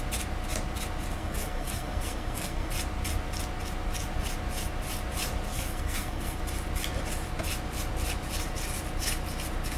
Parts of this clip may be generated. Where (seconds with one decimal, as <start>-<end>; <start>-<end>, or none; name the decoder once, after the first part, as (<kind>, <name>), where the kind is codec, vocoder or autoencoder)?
1.1-2.7 (codec, SNAC); 5.5-6.4